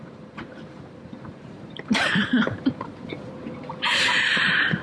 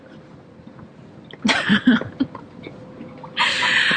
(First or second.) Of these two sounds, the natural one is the second